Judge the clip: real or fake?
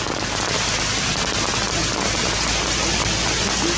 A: real